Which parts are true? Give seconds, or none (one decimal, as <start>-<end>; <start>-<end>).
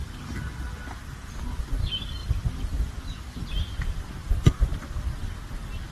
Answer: 0.0-5.9